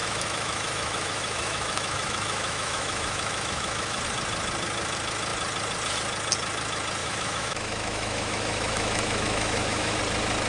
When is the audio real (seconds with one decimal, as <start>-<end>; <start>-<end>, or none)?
4.0-7.0; 10.0-10.5